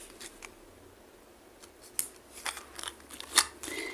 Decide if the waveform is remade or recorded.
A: recorded